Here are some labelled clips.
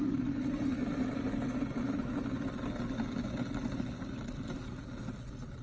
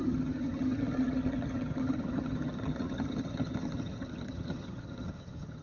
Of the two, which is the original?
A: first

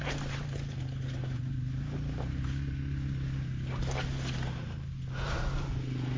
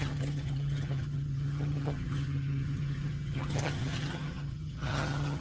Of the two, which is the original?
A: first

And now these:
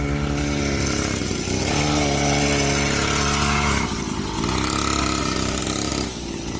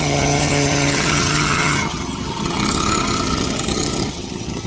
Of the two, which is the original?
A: first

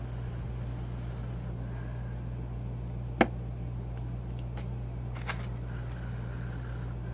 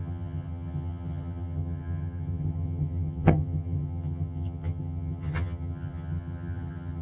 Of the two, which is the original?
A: first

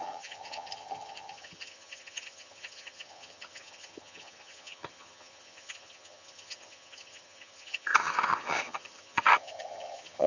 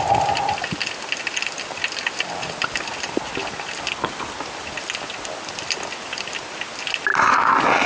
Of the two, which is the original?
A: second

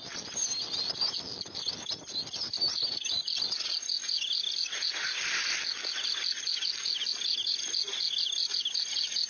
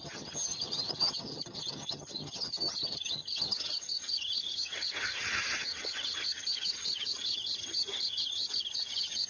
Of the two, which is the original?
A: first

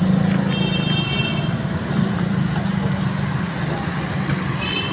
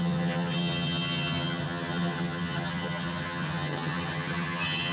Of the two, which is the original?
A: first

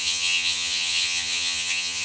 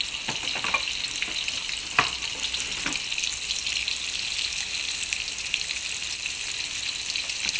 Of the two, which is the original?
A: second